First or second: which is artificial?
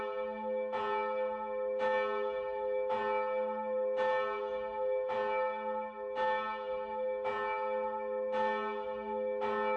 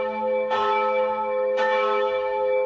second